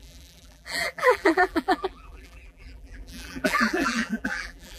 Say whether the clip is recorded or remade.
remade